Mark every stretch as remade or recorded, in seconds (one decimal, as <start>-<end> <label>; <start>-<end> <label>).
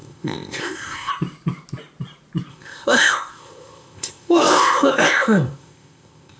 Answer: 0.0-1.1 remade; 1.1-2.5 recorded; 2.5-6.4 remade